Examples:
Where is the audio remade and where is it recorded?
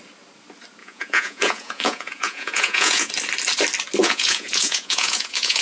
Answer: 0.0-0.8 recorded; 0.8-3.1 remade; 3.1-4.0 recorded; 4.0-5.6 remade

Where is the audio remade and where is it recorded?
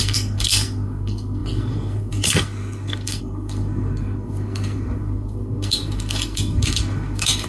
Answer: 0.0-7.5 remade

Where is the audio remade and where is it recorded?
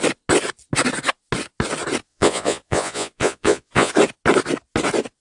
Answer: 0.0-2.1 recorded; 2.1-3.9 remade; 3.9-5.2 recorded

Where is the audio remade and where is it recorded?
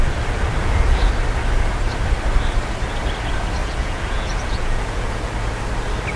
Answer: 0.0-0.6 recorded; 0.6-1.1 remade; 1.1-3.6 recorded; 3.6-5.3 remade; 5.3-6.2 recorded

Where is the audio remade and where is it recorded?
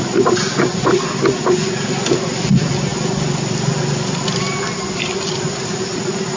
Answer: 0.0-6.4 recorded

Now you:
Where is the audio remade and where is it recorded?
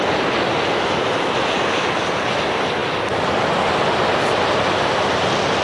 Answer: 0.0-5.6 recorded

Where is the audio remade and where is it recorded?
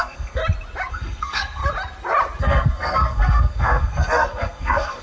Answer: 0.0-0.4 remade; 0.4-0.9 recorded; 0.9-1.6 remade; 1.6-2.4 recorded; 2.4-5.0 remade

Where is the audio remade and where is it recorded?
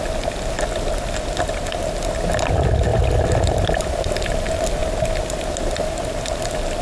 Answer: 0.0-6.8 recorded